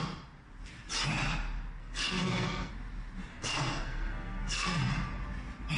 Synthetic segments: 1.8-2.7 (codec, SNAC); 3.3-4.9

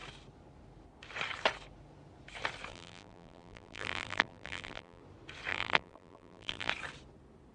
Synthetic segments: 2.7-5.0 (vocoder, BigVGAN v2); 5.5-6.7